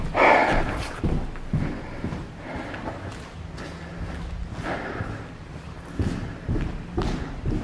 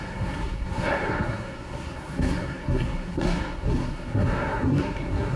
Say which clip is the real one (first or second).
first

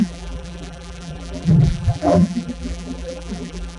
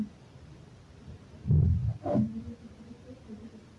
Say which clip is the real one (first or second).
second